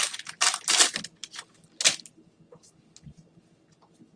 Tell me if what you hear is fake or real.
real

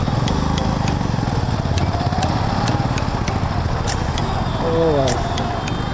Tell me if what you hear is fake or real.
real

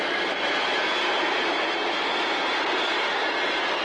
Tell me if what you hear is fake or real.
real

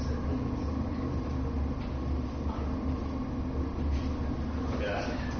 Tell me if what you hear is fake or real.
real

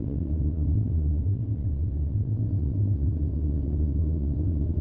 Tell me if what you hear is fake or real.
fake